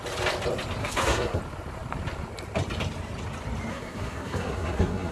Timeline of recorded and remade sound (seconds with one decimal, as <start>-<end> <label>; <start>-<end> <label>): 0.0-0.8 recorded; 0.8-1.4 remade; 1.4-3.7 recorded; 3.7-5.1 remade